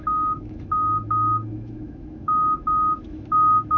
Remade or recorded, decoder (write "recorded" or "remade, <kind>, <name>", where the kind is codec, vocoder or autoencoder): remade, autoencoder, DAC-VAE